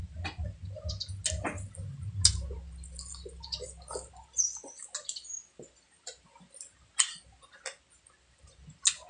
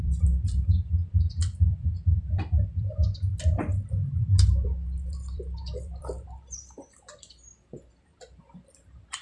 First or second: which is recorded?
first